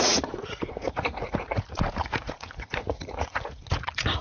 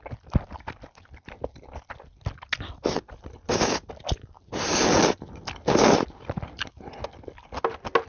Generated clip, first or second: first